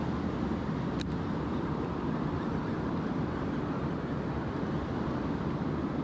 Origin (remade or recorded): recorded